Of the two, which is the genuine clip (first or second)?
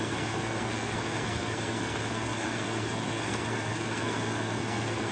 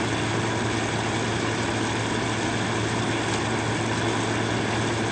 second